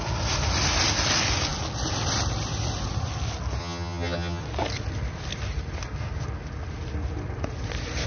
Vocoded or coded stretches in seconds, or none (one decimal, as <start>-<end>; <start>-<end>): 3.6-4.4